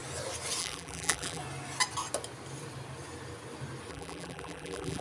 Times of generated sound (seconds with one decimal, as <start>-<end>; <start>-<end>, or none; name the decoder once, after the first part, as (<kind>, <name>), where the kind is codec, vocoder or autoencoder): 0.6-1.4 (vocoder, BigVGAN v2); 3.9-5.0